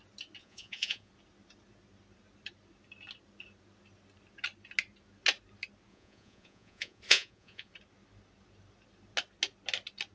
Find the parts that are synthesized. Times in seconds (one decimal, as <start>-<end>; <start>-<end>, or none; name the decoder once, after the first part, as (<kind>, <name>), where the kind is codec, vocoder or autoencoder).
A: 0.4-1.1 (vocoder, Vocos); 5.9-7.7